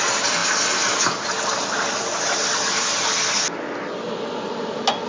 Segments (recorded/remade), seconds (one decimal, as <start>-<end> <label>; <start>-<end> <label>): 0.0-5.1 recorded